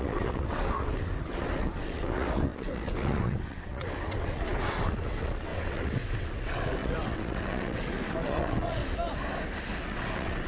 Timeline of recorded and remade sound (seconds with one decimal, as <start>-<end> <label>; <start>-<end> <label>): 0.0-8.8 remade; 8.8-9.8 recorded; 9.8-10.5 remade